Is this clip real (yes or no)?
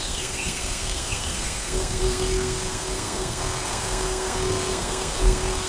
no